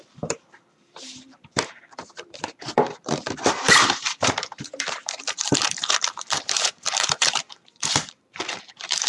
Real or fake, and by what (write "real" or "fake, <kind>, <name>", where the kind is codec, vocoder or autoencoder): fake, vocoder, BigVGAN v2